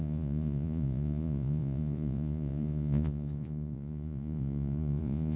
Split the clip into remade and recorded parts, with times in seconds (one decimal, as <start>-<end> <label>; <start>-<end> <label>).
0.0-5.4 remade